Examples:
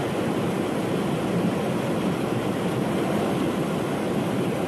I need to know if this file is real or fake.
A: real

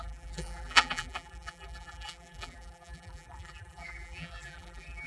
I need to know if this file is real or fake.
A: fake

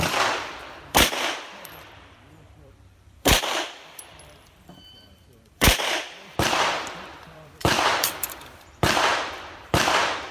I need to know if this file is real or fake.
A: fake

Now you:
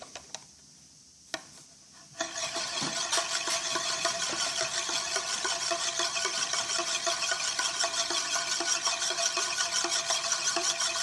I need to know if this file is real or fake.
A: real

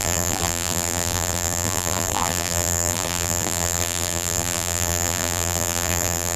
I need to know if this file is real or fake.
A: fake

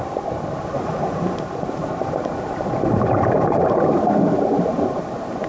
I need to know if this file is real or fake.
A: fake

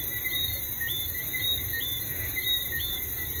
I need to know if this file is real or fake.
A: real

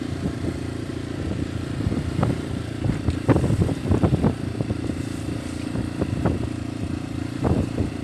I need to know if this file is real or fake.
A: fake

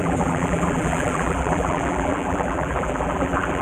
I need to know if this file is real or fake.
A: fake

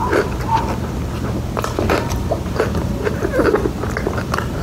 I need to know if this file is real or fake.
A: fake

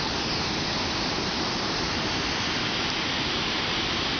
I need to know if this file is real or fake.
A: real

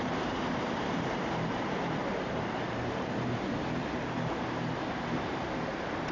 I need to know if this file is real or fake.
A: fake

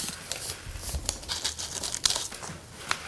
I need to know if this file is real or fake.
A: fake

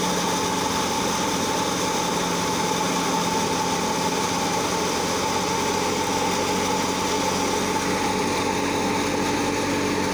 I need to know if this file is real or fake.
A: real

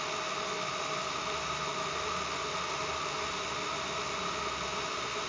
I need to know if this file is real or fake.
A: real